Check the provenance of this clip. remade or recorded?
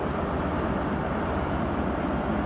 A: remade